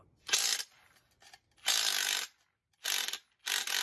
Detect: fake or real real